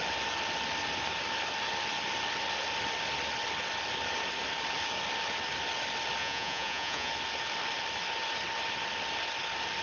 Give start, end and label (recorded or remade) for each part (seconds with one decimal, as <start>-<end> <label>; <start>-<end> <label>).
0.0-6.2 recorded; 6.2-7.1 remade; 7.1-9.8 recorded